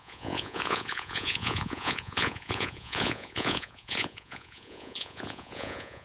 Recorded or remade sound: remade